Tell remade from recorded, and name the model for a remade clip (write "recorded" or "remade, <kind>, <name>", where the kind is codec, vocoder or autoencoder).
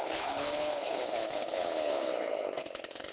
remade, codec, HILCodec